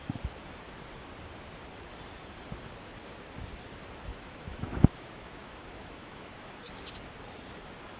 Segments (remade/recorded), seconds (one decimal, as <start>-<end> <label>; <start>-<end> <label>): 0.0-4.1 recorded; 4.1-6.7 remade; 6.7-8.0 recorded

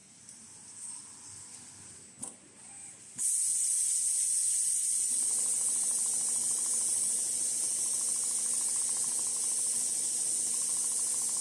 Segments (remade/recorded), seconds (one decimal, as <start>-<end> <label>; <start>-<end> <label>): 0.0-3.5 recorded; 3.5-8.8 remade; 8.8-11.4 recorded

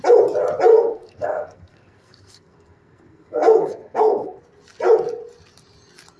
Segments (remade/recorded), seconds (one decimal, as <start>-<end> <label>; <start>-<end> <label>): 0.0-0.7 recorded; 0.7-4.4 remade; 4.4-6.2 recorded

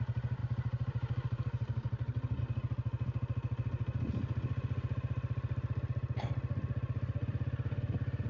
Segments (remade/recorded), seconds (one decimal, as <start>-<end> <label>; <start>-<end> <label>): 0.0-0.4 recorded; 0.4-2.4 remade; 2.4-7.2 recorded; 7.2-7.8 remade; 7.8-8.3 recorded